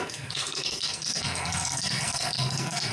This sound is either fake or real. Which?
fake